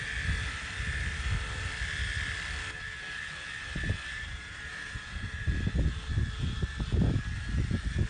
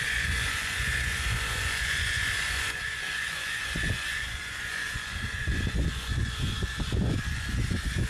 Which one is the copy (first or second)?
second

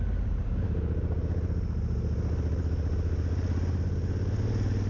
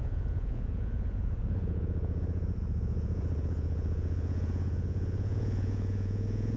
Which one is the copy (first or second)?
second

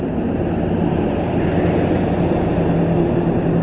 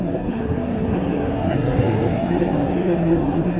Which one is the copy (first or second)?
second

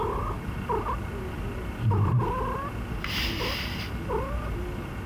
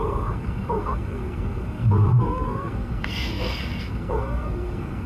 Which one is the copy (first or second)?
second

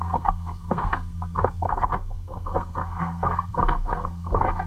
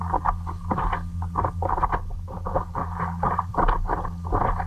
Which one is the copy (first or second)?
first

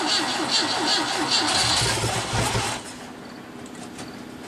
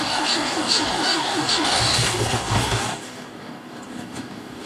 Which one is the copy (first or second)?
second